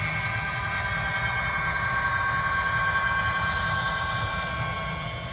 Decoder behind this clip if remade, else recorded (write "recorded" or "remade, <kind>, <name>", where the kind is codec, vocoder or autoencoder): recorded